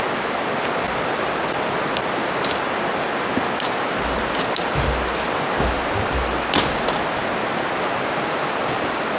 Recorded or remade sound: recorded